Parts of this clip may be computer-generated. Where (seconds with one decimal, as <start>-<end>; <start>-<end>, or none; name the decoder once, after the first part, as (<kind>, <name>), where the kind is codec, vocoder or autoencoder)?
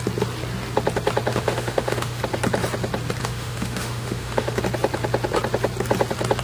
1.3-2.2 (autoencoder, DAC-VAE); 3.2-4.6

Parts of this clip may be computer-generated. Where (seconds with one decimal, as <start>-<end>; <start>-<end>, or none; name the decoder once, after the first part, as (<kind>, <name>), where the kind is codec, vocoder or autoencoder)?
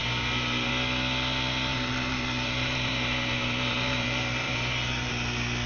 0.0-0.7 (vocoder, BigVGAN v2); 1.7-5.1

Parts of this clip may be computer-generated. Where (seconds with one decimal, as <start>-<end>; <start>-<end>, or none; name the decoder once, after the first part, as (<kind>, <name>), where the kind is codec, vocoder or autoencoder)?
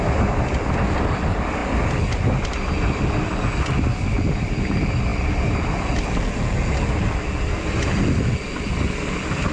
none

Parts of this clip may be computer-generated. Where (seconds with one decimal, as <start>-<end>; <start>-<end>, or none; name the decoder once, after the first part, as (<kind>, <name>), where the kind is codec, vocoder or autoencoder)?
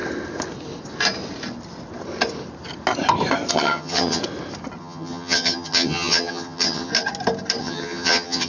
3.5-4.2 (vocoder, HiFi-GAN); 4.8-6.9; 7.6-8.5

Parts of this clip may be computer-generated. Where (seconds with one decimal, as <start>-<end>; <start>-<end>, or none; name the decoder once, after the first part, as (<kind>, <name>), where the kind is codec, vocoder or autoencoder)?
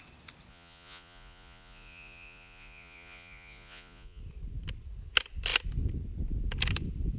0.5-4.2 (vocoder, Vocos)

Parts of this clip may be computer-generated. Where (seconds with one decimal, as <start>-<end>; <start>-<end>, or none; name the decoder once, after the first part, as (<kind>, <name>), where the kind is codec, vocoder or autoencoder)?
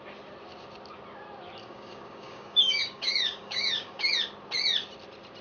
1.6-4.1 (codec, DAC)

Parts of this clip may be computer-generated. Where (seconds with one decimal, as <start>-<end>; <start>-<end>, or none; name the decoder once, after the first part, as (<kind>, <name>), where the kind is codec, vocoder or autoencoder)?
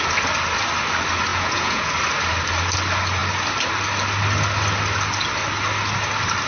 1.3-1.9 (vocoder, Vocos)